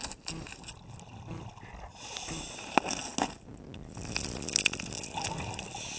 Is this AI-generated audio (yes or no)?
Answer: no